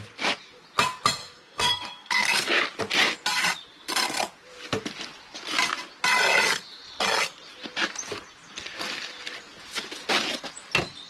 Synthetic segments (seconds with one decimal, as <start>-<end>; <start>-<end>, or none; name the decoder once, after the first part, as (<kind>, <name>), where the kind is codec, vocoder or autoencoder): 1.2-2.5 (codec, SNAC)